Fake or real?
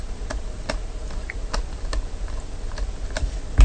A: real